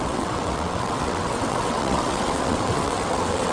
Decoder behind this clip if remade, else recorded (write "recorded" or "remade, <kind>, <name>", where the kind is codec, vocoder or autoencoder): remade, vocoder, WaveNeXt